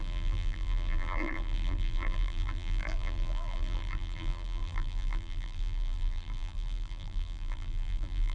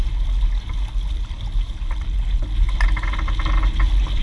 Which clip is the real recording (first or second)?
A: second